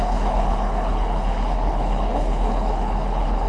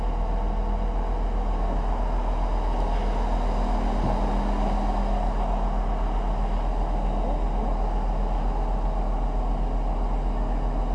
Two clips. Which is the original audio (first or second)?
second